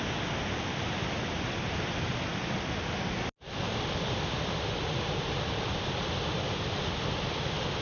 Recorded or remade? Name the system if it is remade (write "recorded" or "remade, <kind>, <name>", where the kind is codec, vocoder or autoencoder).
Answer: recorded